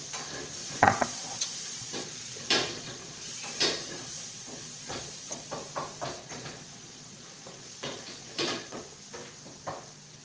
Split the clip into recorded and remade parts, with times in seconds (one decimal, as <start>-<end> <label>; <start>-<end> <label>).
0.0-0.6 recorded; 0.6-5.5 remade; 5.5-6.2 recorded; 6.2-8.8 remade; 8.8-10.2 recorded

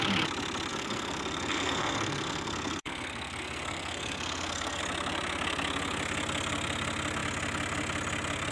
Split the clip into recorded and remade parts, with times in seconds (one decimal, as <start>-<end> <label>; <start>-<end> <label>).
0.0-0.7 recorded; 0.7-4.8 remade; 4.8-8.5 recorded

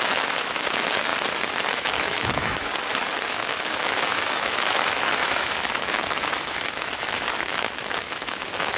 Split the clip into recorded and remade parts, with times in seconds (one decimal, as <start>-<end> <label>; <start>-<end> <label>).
0.0-1.1 remade; 1.1-1.7 recorded; 1.7-2.7 remade; 2.7-3.3 recorded; 3.3-8.8 remade

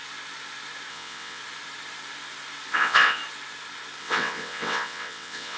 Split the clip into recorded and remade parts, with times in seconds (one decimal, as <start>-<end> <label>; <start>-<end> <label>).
0.0-0.9 recorded; 0.9-1.4 remade; 1.4-2.7 recorded; 2.7-3.2 remade; 3.2-4.0 recorded; 4.0-5.6 remade